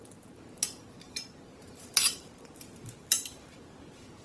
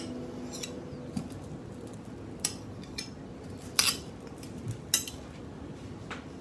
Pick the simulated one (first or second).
first